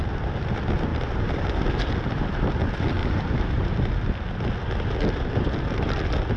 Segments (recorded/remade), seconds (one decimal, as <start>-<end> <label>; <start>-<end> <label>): 0.0-0.9 recorded; 0.9-1.5 remade; 1.5-3.0 recorded; 3.0-3.9 remade; 3.9-6.4 recorded